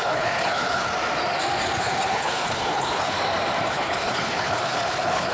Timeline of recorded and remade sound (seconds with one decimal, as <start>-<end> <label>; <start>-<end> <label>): 0.0-0.9 remade; 0.9-1.8 recorded; 1.8-3.2 remade; 3.2-3.7 recorded; 3.7-5.3 remade